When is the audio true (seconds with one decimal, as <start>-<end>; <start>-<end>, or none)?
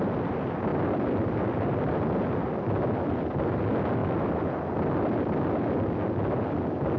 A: 0.0-0.7; 1.7-7.0